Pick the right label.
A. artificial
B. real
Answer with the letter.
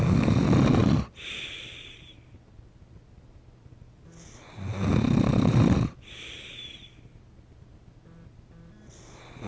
B